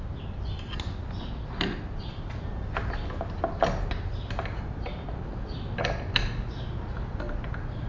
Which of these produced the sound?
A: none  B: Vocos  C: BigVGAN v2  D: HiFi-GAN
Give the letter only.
A